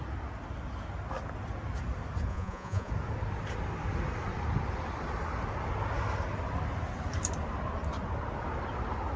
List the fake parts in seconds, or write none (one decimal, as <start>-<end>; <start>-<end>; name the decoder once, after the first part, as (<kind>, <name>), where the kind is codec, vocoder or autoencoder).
2.3-2.9 (vocoder, Vocos)